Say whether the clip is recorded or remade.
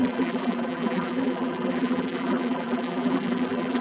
remade